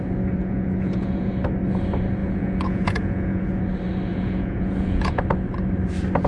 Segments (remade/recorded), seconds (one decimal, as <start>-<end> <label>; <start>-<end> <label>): 0.0-0.4 recorded; 0.4-1.3 remade; 1.3-2.2 recorded; 2.2-3.6 remade; 3.6-4.1 recorded; 4.1-5.2 remade; 5.2-6.3 recorded